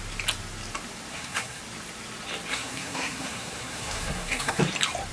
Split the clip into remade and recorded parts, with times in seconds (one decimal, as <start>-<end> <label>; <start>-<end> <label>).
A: 0.0-1.1 recorded; 1.1-1.6 remade; 1.6-2.5 recorded; 2.5-4.6 remade; 4.6-5.1 recorded

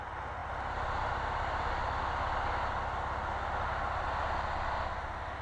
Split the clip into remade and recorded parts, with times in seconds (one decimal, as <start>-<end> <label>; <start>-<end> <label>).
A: 0.0-5.4 recorded

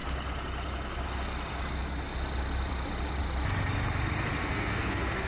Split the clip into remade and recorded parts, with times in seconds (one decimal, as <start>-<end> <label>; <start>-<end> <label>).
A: 0.0-4.4 recorded; 4.4-5.3 remade

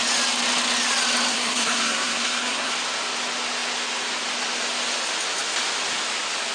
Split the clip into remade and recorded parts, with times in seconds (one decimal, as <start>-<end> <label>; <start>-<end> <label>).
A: 0.0-1.3 recorded; 1.3-2.7 remade; 2.7-6.5 recorded

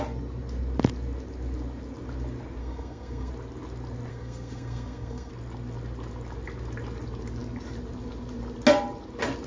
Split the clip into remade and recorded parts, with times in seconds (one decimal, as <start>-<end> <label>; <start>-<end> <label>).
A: 0.0-2.6 recorded; 2.6-3.3 remade; 3.3-4.1 recorded; 4.1-5.3 remade; 5.3-9.5 recorded

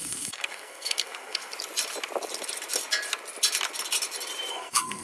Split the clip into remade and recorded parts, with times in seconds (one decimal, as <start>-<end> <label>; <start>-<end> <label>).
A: 0.0-1.5 remade; 1.5-4.5 recorded; 4.5-5.0 remade